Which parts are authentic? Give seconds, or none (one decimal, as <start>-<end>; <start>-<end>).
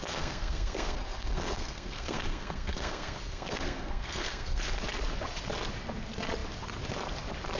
4.6-7.6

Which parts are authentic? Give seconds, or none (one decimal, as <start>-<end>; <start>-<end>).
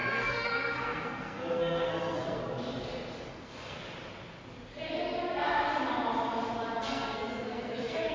2.4-3.3; 3.8-6.8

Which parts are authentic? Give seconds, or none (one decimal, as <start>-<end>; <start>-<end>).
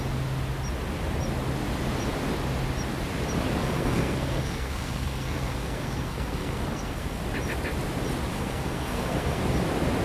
0.0-3.6; 7.2-8.3; 9.4-10.0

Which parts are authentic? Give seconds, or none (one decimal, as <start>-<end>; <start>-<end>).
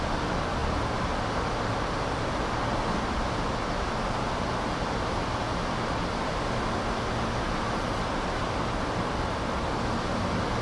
0.0-10.6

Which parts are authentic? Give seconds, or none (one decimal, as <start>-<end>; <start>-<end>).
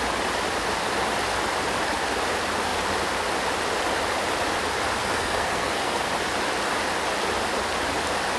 0.0-5.0; 6.1-8.4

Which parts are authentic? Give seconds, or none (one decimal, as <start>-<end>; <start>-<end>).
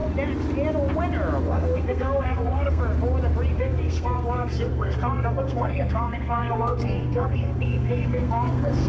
0.0-1.4; 2.8-3.6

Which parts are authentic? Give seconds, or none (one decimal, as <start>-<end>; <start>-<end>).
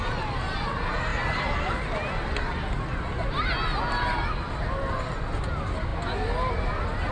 0.0-7.1